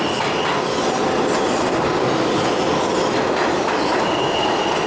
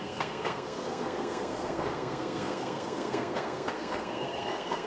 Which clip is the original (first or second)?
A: first